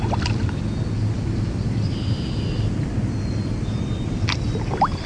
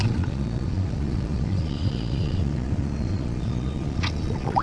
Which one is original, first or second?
first